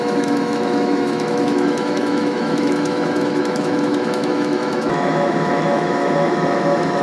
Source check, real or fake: fake